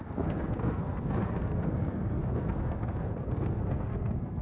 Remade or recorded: remade